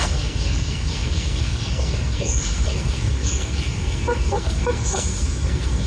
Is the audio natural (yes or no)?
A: no